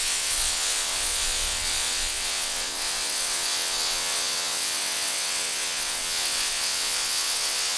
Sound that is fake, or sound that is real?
fake